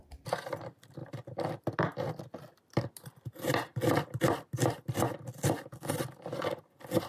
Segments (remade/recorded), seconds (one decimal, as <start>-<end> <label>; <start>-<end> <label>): 0.0-7.1 recorded